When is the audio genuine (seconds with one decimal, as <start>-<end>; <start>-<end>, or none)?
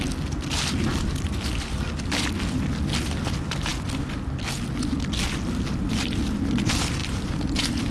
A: 0.0-7.0